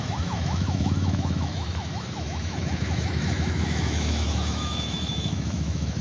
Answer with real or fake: fake